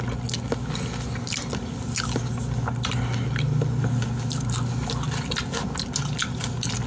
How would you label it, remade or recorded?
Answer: recorded